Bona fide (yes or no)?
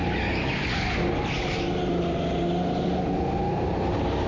yes